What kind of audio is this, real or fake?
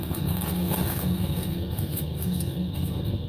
fake